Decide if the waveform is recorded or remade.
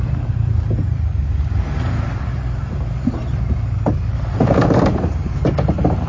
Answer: remade